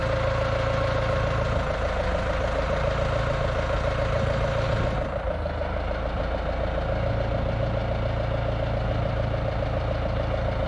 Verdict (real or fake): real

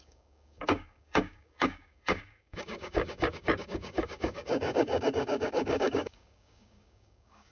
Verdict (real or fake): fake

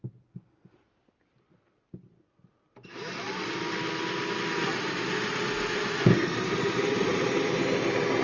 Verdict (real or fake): real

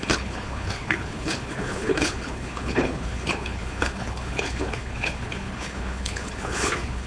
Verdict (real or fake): fake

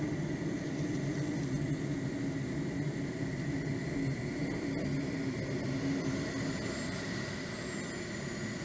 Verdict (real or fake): real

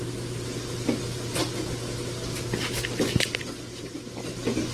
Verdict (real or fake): fake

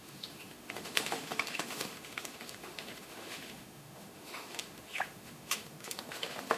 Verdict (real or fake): fake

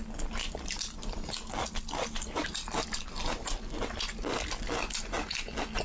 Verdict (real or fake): real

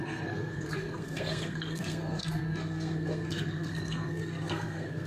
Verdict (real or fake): fake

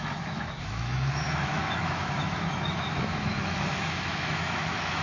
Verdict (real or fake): fake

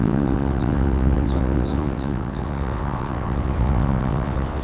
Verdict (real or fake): fake